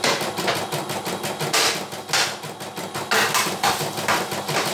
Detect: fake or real real